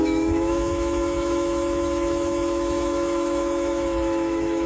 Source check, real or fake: fake